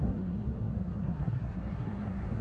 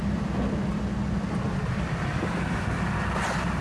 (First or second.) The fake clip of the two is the first